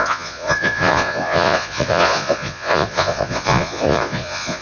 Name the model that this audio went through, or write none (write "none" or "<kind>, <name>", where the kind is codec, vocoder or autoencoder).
vocoder, Vocos